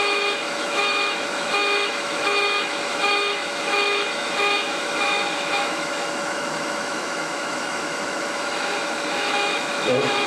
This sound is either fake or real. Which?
fake